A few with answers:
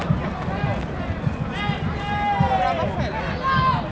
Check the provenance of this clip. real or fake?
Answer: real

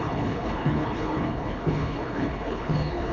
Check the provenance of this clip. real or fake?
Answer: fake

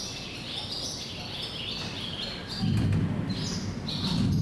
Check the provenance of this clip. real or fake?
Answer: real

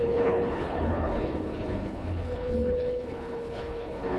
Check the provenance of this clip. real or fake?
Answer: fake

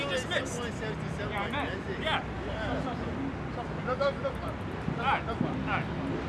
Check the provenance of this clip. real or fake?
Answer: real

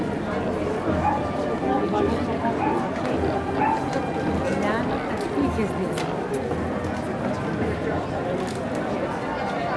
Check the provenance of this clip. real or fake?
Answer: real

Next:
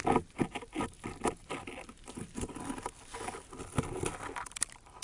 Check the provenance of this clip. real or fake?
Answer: real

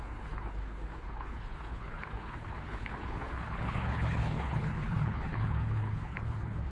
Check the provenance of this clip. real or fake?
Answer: fake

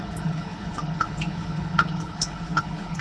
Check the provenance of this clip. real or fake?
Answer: fake